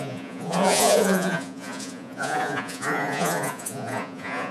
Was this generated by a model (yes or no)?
yes